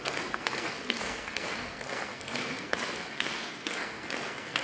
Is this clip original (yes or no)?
no